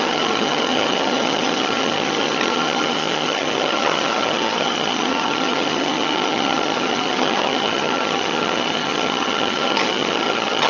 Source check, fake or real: fake